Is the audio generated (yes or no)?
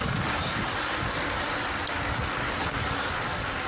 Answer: no